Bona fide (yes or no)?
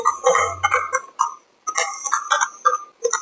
yes